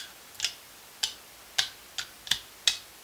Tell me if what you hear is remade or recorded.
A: recorded